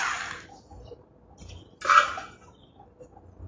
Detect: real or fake real